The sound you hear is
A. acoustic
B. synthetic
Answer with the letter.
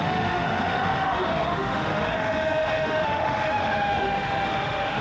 B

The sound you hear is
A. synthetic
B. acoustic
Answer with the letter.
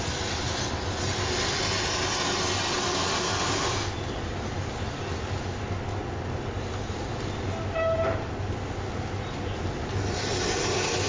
B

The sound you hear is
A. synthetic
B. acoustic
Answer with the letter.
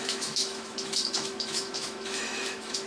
A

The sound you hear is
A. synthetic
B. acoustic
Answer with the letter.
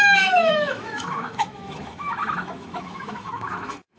A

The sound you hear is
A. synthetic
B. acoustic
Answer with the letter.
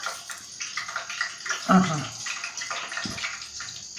B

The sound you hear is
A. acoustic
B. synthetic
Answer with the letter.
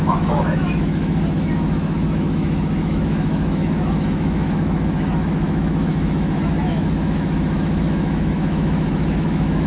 B